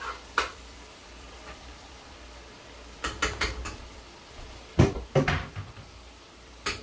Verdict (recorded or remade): remade